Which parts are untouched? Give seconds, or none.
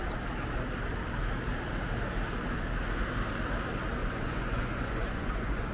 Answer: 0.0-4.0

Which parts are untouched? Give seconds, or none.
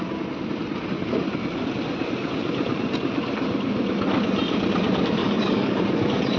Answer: 0.0-5.2; 5.8-6.4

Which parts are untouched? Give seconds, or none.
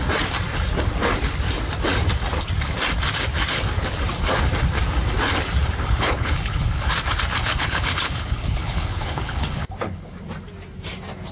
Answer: 0.0-5.8; 6.9-7.4; 10.1-11.3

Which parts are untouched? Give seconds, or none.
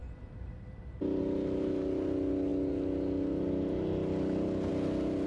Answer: 0.0-5.3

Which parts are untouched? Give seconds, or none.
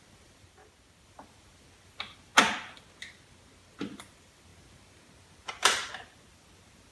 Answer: 2.3-3.8; 4.5-5.5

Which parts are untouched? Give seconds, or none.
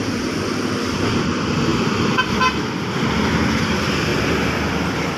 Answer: 1.7-3.2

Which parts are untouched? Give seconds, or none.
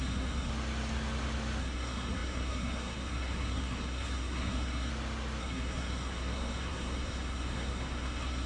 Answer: 0.5-1.6; 4.9-5.4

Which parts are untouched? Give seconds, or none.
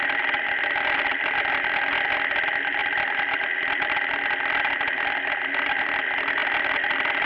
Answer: 0.0-2.8; 4.7-7.3